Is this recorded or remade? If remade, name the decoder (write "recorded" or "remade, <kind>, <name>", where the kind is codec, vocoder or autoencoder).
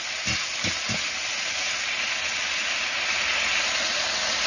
recorded